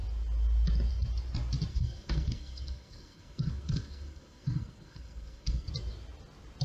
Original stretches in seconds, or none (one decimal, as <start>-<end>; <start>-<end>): 0.0-1.7; 5.7-6.6